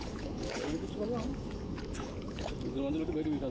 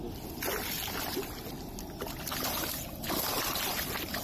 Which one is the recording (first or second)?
second